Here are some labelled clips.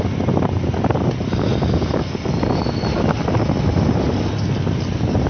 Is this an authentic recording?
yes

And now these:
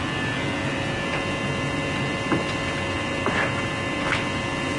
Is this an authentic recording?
yes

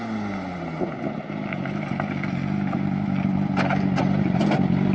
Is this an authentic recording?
yes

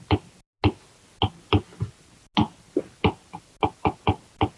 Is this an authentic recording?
yes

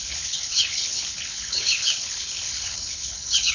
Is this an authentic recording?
no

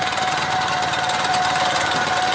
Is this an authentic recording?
no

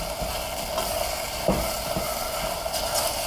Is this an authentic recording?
yes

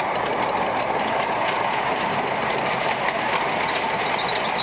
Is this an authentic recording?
yes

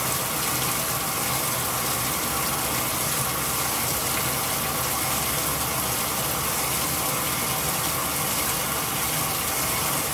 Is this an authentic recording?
yes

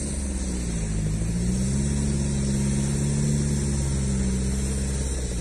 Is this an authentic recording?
yes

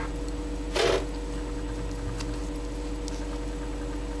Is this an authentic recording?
yes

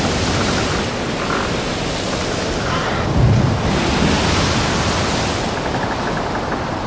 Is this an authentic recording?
yes